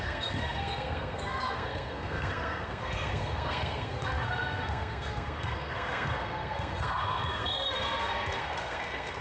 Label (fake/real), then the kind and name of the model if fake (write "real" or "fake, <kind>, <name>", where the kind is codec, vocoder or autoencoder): fake, codec, SNAC